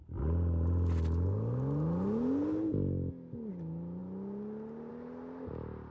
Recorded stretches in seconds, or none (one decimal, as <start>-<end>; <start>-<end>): 0.0-5.9